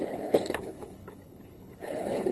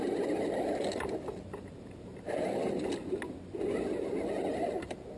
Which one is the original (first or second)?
second